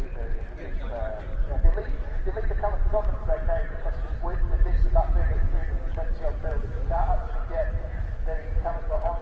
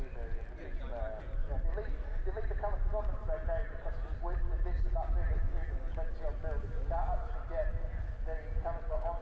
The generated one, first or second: first